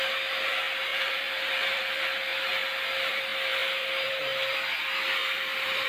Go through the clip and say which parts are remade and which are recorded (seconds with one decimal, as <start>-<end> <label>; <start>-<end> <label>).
0.0-0.9 recorded; 0.9-1.8 remade; 1.8-5.2 recorded; 5.2-5.9 remade